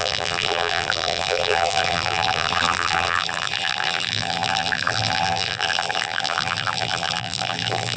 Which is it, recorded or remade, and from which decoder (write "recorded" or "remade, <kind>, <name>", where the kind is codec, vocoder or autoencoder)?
remade, vocoder, BigVGAN v2